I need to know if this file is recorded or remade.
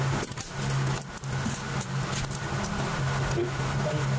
recorded